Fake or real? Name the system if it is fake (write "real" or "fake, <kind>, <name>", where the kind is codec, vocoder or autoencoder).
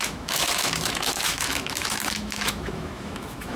fake, autoencoder, DAC-VAE